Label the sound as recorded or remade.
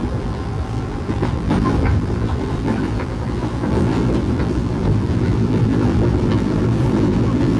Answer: remade